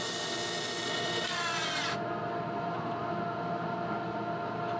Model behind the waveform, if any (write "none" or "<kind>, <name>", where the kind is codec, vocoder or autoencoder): none